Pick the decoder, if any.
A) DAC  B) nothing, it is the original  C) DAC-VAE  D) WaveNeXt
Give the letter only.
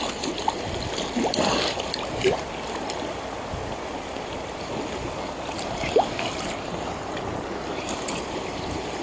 B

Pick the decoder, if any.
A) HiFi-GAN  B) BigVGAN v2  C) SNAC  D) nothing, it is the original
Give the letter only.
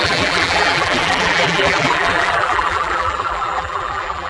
B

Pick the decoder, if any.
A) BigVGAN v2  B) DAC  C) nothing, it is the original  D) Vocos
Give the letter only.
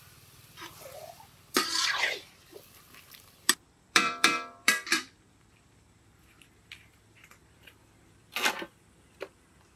A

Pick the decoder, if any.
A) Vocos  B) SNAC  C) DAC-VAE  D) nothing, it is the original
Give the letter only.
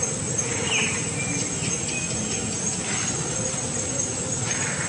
D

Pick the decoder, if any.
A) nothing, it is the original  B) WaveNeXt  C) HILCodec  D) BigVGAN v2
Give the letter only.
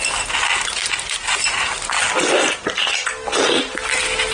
A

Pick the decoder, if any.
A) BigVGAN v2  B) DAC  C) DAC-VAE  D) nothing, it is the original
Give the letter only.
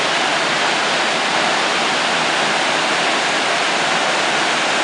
D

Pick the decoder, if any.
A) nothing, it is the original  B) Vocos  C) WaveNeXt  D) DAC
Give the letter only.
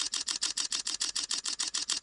B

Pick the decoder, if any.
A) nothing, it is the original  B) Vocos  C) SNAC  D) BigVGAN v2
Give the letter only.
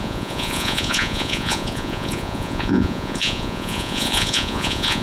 B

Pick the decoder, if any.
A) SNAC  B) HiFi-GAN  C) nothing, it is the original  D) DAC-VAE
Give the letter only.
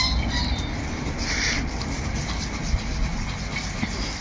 C